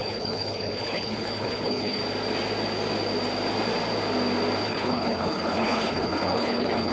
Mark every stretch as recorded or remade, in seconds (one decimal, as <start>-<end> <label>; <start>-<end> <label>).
0.0-2.0 remade; 2.0-4.6 recorded; 4.6-6.9 remade